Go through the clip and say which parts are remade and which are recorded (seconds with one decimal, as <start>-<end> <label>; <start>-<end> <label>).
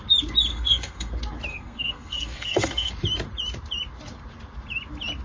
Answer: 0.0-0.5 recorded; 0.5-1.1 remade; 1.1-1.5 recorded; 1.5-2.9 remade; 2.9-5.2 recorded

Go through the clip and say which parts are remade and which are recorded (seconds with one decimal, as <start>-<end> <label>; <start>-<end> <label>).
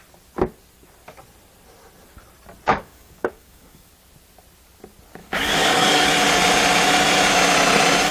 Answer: 0.0-2.7 recorded; 2.7-3.9 remade; 3.9-5.2 recorded; 5.2-6.1 remade; 6.1-8.1 recorded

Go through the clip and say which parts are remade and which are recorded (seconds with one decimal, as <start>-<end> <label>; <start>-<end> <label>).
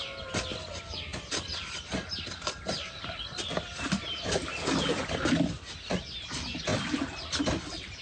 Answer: 0.0-8.0 recorded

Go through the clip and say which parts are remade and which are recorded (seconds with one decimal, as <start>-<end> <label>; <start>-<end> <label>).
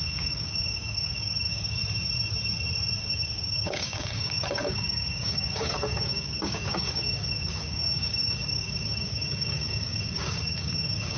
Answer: 0.0-1.8 remade; 1.8-3.0 recorded; 3.0-11.2 remade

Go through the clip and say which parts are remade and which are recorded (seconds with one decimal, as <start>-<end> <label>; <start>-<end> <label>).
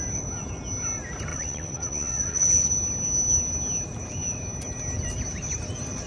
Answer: 0.0-1.3 recorded; 1.3-2.7 remade; 2.7-6.1 recorded